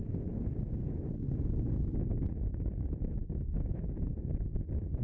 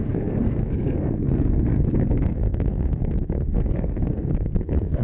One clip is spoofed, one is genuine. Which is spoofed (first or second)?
second